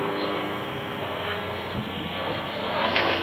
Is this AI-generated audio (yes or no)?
yes